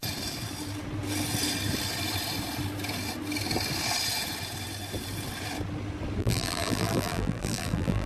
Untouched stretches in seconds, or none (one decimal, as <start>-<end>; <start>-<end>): 0.0-6.2